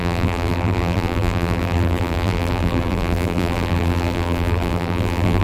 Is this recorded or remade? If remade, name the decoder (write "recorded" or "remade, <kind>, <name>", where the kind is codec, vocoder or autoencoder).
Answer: remade, vocoder, BigVGAN v2